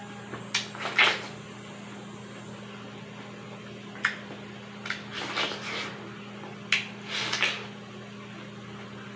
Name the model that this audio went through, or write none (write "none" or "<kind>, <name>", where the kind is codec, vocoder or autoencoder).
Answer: none